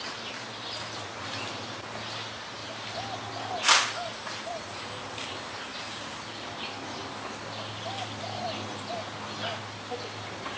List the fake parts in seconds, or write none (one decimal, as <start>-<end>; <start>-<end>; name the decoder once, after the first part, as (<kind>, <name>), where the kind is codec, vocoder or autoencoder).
none